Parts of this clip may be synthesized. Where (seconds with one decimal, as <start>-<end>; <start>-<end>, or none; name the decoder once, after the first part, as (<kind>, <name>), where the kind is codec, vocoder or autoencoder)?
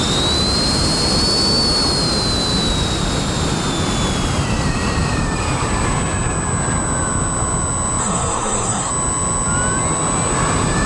8.0-8.9 (codec, SNAC)